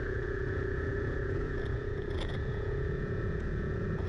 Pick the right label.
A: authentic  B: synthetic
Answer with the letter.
B